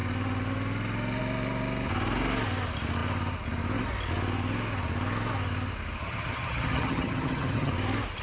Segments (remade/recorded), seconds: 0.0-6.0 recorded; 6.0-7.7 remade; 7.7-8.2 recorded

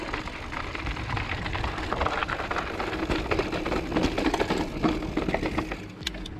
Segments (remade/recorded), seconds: 0.0-0.7 recorded; 0.7-3.0 remade; 3.0-6.4 recorded

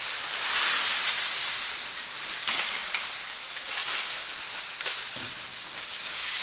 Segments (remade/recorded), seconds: 0.0-5.5 recorded; 5.5-6.4 remade

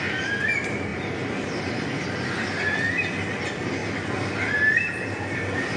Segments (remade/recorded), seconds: 0.0-0.9 recorded; 0.9-1.6 remade; 1.6-5.8 recorded

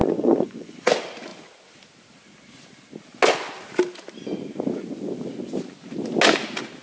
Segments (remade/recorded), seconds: 0.0-0.9 remade; 0.9-6.8 recorded

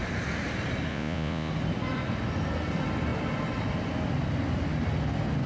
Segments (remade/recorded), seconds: 0.0-0.9 recorded; 0.9-1.5 remade; 1.5-5.5 recorded

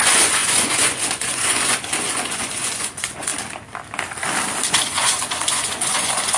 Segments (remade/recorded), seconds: 0.0-3.3 remade; 3.3-4.7 recorded; 4.7-6.4 remade

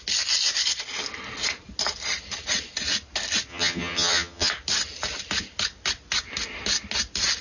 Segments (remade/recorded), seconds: 0.0-3.5 recorded; 3.5-4.5 remade; 4.5-7.4 recorded